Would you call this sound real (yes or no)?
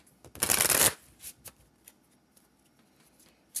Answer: yes